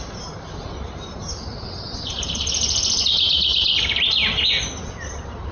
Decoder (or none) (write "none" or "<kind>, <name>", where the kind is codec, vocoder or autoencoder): none